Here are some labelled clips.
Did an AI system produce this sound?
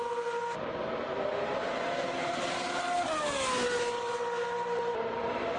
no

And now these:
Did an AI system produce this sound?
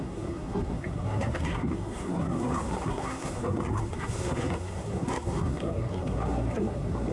yes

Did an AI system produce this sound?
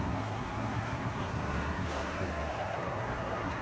yes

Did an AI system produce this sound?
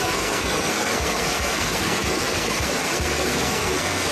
yes